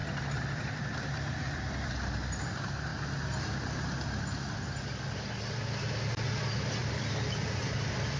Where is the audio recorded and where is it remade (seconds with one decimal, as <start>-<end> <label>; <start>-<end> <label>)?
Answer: 0.0-1.9 remade; 1.9-2.9 recorded; 2.9-4.8 remade; 4.8-6.8 recorded; 6.8-7.6 remade; 7.6-8.2 recorded